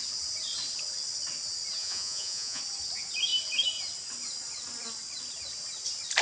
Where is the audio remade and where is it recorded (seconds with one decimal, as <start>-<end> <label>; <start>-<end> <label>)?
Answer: 0.0-1.8 recorded; 1.8-2.6 remade; 2.6-6.2 recorded